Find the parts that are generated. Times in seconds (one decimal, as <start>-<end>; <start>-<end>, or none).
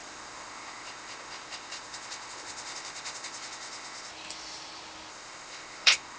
0.0-4.1; 5.1-6.2